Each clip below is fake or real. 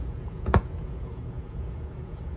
fake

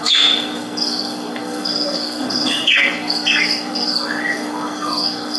fake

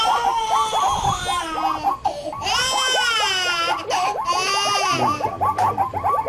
real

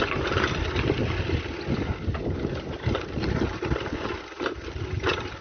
real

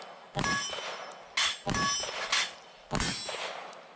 real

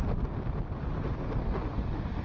real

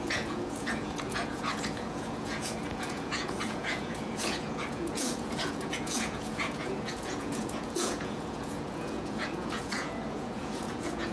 fake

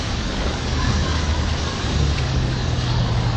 fake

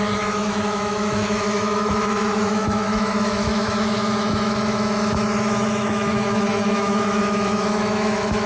fake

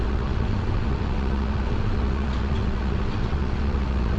fake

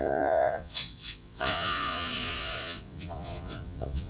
fake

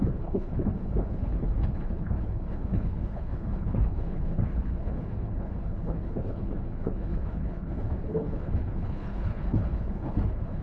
fake